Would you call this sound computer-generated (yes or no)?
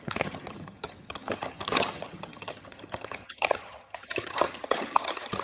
yes